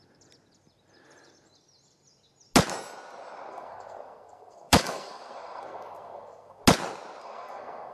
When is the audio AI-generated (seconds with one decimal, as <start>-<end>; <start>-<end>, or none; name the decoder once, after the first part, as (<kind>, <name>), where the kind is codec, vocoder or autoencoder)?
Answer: 3.5-6.6 (codec, SNAC); 7.2-7.9